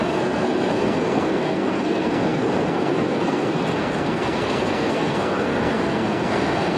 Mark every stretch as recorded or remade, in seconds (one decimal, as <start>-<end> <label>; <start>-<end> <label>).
0.0-6.8 remade